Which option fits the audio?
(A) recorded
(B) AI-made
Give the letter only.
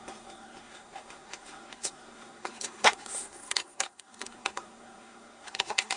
B